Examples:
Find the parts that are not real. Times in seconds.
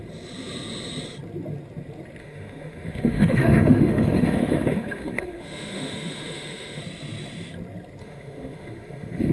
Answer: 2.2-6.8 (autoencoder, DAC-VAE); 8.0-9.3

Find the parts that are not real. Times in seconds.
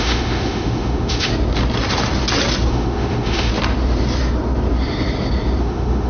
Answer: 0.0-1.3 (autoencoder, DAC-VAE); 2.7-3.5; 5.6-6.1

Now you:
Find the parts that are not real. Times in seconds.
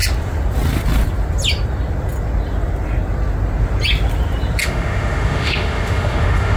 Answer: 4.6-6.6 (autoencoder, DAC-VAE)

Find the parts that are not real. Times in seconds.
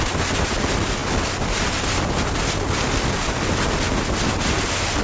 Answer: none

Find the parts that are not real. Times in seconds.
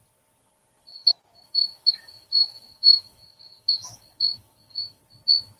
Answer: 1.7-5.0 (autoencoder, DAC-VAE)